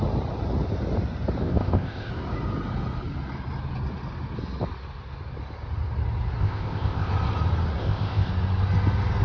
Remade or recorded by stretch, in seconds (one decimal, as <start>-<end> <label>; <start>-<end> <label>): 0.0-1.4 recorded; 1.4-2.1 remade; 2.1-6.4 recorded; 6.4-7.1 remade; 7.1-7.8 recorded; 7.8-8.3 remade; 8.3-9.2 recorded